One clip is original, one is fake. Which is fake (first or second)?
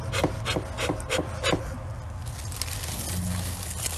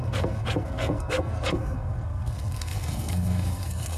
second